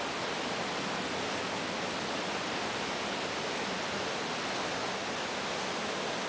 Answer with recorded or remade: recorded